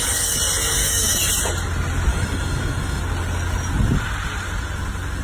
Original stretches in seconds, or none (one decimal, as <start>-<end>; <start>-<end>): 0.0-0.8; 1.3-2.1; 3.0-5.2